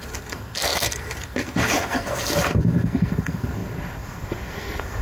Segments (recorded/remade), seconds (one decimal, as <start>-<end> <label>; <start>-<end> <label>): 0.0-5.0 remade